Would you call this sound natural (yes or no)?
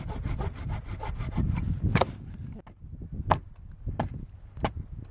yes